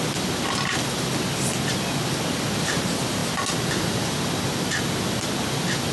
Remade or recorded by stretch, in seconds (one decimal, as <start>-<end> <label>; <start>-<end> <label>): 0.0-5.9 recorded